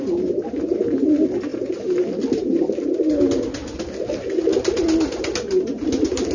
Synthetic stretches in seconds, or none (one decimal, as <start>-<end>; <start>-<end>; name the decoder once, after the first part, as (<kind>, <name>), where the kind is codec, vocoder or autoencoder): none